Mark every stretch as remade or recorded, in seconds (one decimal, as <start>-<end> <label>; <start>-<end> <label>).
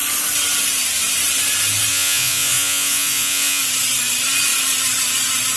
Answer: 0.0-1.9 recorded; 1.9-3.6 remade; 3.6-5.6 recorded